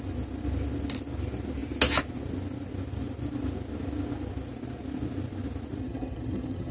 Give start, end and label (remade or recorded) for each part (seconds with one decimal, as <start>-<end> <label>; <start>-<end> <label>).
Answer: 0.0-5.8 recorded; 5.8-6.7 remade

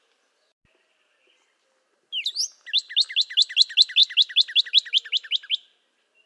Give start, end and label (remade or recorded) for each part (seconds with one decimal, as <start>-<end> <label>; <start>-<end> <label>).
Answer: 0.0-6.3 recorded

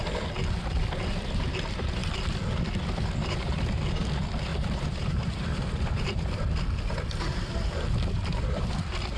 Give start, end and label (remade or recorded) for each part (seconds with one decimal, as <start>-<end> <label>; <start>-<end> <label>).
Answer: 0.0-4.5 recorded; 4.5-6.4 remade; 6.4-9.2 recorded

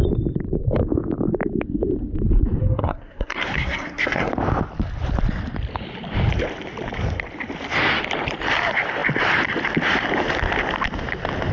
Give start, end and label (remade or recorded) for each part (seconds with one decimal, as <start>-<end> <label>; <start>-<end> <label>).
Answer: 0.0-2.6 recorded; 2.6-4.3 remade; 4.3-11.5 recorded